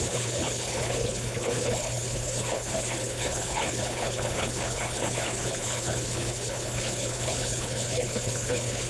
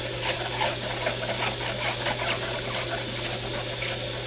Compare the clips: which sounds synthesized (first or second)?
first